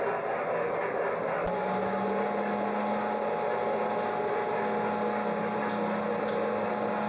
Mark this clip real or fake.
real